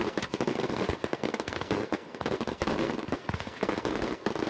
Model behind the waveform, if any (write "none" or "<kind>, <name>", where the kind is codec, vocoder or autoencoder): codec, SNAC